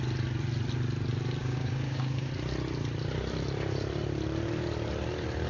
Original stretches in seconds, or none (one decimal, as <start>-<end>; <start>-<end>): 0.0-1.4; 2.3-5.5